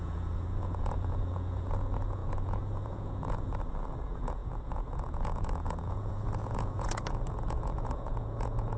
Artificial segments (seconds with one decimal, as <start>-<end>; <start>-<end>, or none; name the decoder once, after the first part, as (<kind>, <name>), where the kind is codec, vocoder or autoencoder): 0.0-8.8 (vocoder, Vocos)